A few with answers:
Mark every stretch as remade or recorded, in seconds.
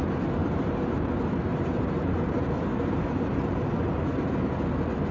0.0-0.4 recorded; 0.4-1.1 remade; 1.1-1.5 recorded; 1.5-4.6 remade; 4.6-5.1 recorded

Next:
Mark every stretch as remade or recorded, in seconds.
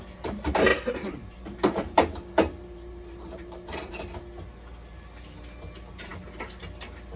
0.0-0.7 recorded; 0.7-3.9 remade; 3.9-7.2 recorded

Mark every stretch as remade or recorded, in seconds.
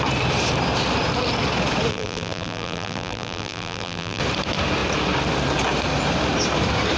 0.0-1.9 recorded; 1.9-4.2 remade; 4.2-7.0 recorded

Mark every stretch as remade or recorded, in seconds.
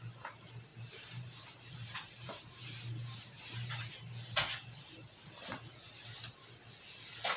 0.0-0.7 recorded; 0.7-3.9 remade; 3.9-7.4 recorded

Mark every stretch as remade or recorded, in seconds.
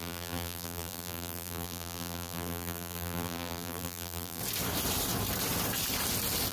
0.0-4.4 remade; 4.4-6.5 recorded